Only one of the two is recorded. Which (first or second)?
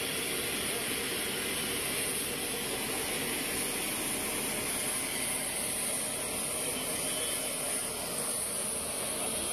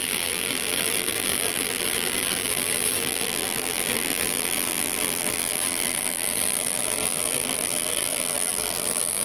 first